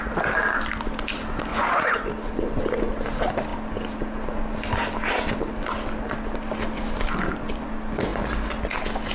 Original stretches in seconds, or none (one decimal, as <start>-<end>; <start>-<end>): 0.0-1.5; 2.1-9.1